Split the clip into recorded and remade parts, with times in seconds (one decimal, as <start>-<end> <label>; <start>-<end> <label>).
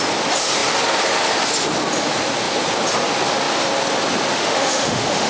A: 0.0-4.3 recorded; 4.3-5.3 remade